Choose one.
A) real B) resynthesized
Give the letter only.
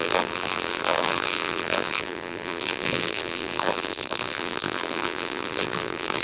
B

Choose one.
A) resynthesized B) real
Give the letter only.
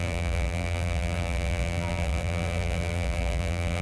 A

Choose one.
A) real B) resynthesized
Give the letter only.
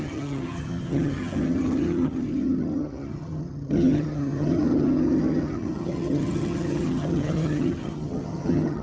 B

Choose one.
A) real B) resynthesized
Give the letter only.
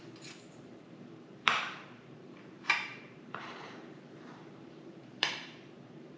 B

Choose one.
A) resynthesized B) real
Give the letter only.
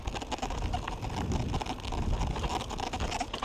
B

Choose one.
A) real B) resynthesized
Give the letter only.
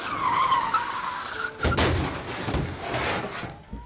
A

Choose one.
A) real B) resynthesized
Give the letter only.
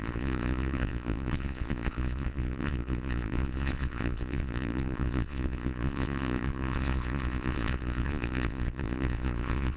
B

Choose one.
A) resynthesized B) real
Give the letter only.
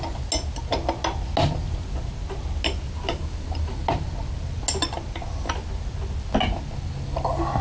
B